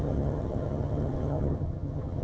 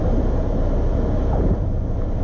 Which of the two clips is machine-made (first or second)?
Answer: first